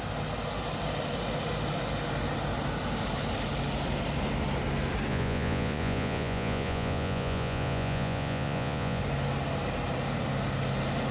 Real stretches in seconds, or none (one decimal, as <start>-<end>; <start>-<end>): 0.0-5.1; 9.0-11.1